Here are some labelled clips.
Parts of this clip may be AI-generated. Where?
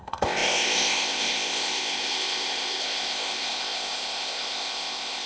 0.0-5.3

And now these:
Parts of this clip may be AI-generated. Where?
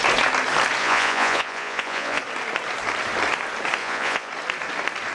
0.8-2.2; 3.8-4.3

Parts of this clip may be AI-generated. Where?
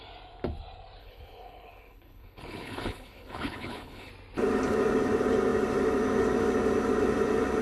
1.0-4.1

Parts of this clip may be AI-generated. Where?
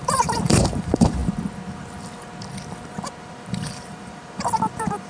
0.0-1.2; 3.2-5.1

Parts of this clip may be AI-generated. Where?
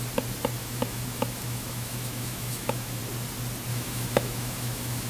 0.6-3.0; 3.7-5.1